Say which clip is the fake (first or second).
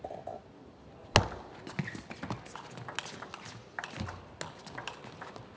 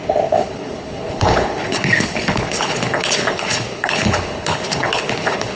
second